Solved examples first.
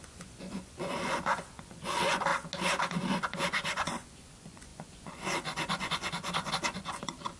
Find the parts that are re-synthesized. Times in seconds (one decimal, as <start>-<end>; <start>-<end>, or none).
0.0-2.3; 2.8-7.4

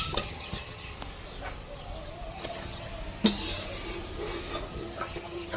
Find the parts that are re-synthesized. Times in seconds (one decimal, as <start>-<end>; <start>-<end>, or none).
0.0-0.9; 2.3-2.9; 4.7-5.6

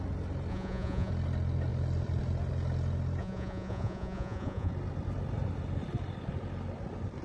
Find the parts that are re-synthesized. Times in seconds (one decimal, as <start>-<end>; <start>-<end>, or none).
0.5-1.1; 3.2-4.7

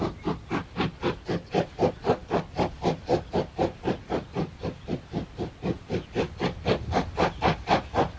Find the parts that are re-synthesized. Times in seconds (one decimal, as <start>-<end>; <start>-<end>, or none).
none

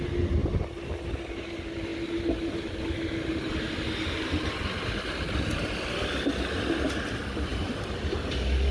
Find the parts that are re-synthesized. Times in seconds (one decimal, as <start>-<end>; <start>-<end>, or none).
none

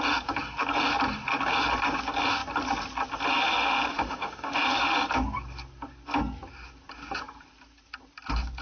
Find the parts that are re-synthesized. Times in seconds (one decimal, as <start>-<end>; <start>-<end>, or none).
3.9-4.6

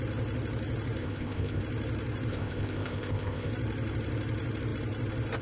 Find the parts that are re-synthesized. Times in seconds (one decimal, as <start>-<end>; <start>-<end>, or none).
1.0-1.6; 2.3-3.5